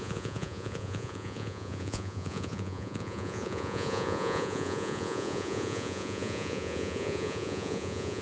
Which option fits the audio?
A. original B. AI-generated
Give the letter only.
B